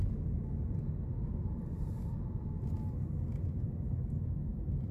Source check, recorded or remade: recorded